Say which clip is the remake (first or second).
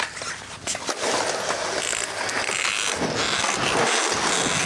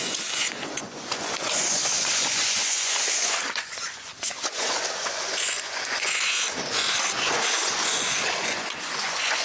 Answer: second